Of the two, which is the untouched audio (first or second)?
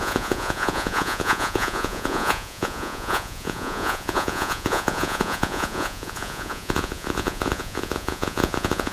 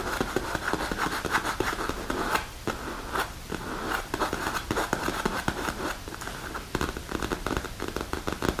second